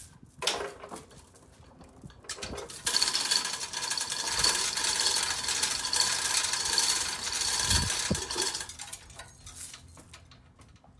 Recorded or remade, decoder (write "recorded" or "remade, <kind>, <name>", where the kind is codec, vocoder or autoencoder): recorded